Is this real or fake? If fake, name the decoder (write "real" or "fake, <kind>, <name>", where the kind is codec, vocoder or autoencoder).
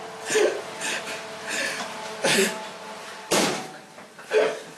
real